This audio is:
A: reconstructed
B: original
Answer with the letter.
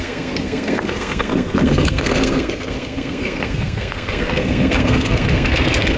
A